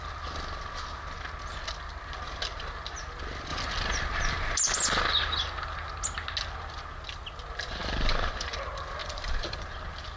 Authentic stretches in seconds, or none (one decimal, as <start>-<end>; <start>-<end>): 0.0-9.0; 9.7-10.2